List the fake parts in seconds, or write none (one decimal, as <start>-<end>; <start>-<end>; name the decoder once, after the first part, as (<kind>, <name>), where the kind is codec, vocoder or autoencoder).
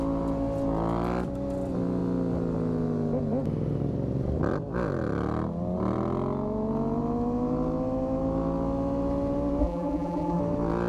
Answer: 9.6-10.4 (vocoder, BigVGAN v2)